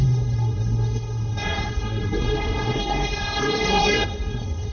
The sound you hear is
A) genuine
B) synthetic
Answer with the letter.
B